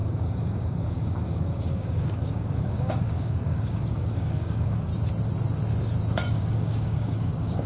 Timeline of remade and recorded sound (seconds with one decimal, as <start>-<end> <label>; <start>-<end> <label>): 0.0-4.9 remade; 4.9-6.3 recorded; 6.3-7.7 remade